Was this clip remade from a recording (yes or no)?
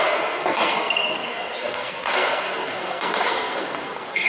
yes